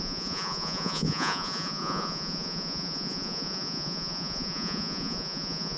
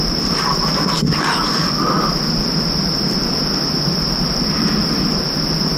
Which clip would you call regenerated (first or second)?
first